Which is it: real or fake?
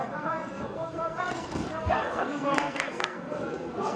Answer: fake